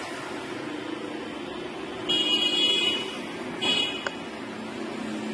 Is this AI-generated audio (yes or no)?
no